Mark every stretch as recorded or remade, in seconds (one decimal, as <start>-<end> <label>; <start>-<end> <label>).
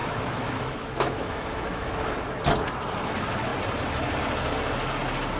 0.0-2.1 remade; 2.1-5.4 recorded